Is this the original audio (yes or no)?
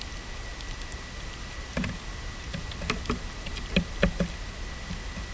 yes